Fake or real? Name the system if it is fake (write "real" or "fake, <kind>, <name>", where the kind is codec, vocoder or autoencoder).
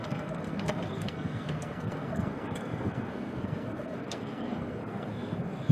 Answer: fake, codec, SNAC